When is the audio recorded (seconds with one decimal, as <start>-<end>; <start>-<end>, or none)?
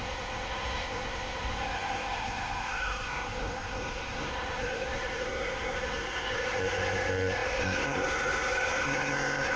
none